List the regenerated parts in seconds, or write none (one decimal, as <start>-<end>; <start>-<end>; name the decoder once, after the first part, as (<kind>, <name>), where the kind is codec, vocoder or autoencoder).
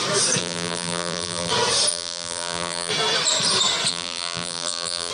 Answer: 0.4-1.5 (vocoder, BigVGAN v2); 1.9-2.9; 3.9-5.1